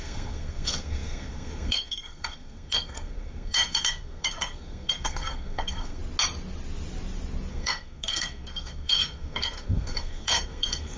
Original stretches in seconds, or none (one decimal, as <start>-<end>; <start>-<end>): 6.0-7.5